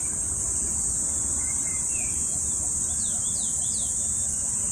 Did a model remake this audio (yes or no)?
no